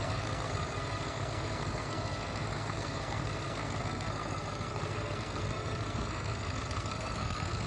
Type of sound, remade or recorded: remade